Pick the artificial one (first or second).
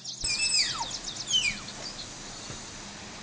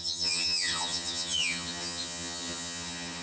second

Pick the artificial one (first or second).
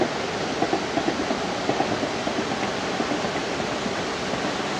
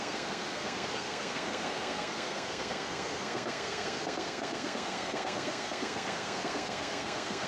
second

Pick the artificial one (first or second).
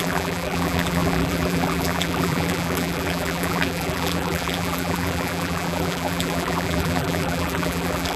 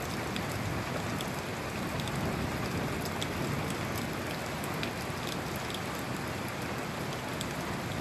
first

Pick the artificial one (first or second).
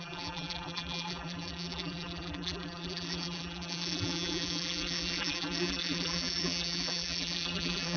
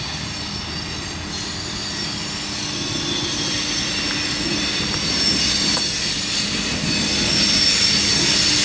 first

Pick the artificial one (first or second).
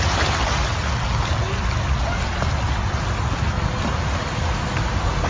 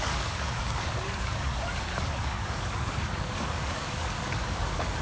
second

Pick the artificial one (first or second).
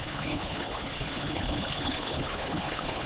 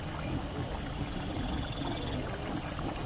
first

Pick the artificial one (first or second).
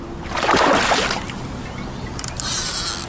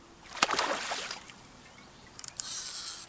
second